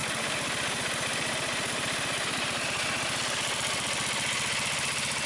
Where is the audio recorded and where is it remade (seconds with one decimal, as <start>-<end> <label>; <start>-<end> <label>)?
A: 0.0-3.2 remade; 3.2-5.3 recorded